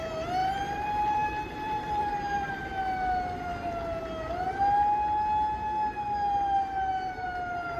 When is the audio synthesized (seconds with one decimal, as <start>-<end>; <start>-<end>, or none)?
0.4-2.5